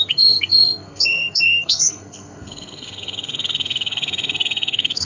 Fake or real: fake